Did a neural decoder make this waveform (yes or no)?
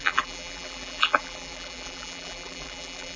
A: yes